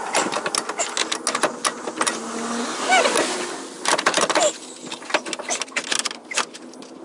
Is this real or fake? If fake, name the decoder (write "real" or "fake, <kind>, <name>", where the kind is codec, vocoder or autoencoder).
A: real